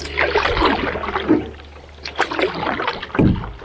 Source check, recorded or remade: recorded